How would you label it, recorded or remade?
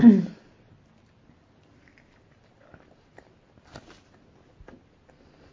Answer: recorded